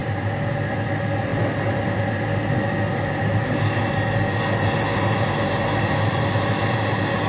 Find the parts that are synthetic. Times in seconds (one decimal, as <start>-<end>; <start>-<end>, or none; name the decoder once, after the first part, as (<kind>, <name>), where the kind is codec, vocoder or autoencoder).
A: none